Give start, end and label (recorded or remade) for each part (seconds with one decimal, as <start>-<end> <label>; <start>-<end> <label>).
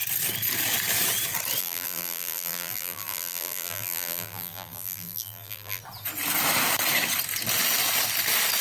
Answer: 0.0-1.6 recorded; 1.6-5.8 remade; 5.8-8.6 recorded